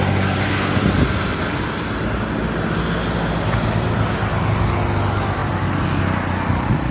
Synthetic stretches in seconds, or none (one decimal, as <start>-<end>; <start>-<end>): none